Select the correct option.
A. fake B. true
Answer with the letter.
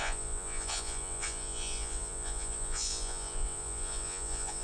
A